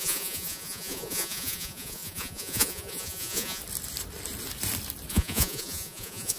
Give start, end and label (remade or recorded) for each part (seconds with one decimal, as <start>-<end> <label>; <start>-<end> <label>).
0.0-3.6 remade; 3.6-5.1 recorded; 5.1-6.4 remade

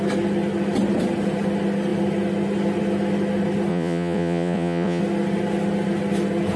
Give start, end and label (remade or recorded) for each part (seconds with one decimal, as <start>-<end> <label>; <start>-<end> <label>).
0.0-3.7 recorded; 3.7-5.0 remade; 5.0-6.6 recorded

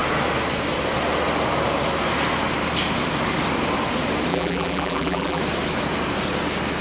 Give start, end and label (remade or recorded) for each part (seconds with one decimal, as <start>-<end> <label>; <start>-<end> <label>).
0.0-4.3 recorded; 4.3-5.4 remade; 5.4-6.8 recorded

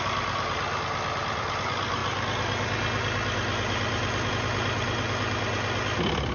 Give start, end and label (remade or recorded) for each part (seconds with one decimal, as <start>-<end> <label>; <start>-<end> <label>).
0.0-6.3 recorded

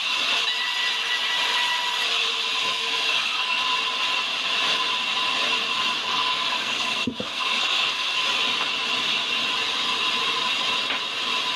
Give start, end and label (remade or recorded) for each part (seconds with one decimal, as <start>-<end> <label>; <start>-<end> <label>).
0.0-2.6 recorded; 2.6-3.6 remade; 3.6-6.0 recorded; 6.0-8.2 remade; 8.2-11.6 recorded

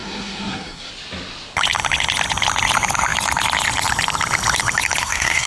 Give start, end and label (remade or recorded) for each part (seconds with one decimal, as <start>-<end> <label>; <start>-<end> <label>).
0.0-0.9 remade; 0.9-5.0 recorded; 5.0-5.5 remade

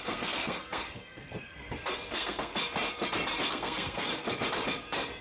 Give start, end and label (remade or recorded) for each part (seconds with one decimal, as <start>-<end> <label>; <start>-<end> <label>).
0.0-2.5 remade; 2.5-3.5 recorded; 3.5-4.1 remade; 4.1-5.2 recorded

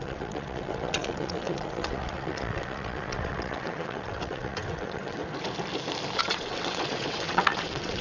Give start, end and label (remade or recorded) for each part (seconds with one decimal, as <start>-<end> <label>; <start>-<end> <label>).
0.0-5.2 remade; 5.2-6.2 recorded; 6.2-8.0 remade